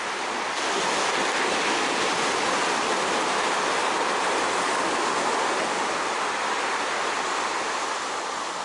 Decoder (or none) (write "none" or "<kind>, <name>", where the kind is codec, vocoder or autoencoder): none